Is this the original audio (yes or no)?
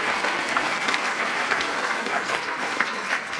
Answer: no